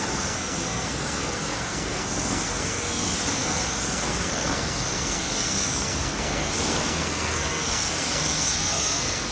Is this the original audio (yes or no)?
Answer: no